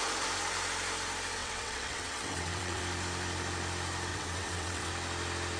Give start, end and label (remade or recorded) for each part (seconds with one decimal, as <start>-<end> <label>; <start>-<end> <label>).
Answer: 0.0-1.4 recorded; 1.4-2.8 remade; 2.8-4.1 recorded; 4.1-4.9 remade; 4.9-5.6 recorded